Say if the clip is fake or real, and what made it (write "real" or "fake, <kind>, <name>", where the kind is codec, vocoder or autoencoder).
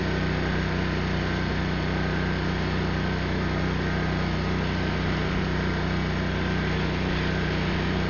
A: real